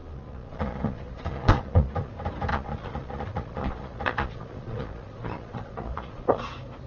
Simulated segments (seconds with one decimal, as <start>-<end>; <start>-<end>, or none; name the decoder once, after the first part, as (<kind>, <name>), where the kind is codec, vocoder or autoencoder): 0.0-2.1 (vocoder, Vocos); 2.5-6.4

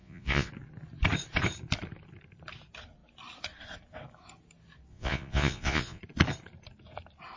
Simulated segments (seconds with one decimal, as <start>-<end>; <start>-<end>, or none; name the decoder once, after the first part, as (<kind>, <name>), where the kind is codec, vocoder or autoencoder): 0.0-0.5 (vocoder, Vocos); 4.9-6.0

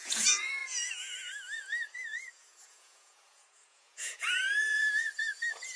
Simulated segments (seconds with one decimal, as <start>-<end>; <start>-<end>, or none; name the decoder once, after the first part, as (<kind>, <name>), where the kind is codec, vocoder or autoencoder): 0.0-5.8 (vocoder, Vocos)

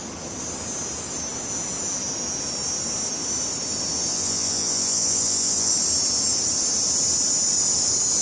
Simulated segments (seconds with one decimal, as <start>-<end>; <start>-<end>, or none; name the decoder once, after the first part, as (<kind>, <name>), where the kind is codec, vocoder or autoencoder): 4.1-5.7 (vocoder, Vocos)

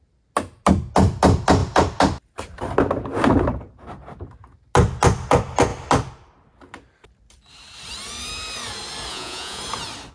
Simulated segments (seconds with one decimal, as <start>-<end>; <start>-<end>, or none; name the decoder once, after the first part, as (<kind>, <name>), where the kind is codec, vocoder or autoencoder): 9.1-9.6 (vocoder, Vocos)

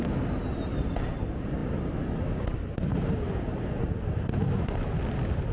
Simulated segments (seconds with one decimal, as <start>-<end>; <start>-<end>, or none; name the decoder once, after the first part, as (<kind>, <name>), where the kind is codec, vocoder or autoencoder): none